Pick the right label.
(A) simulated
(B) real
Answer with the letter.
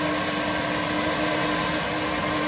B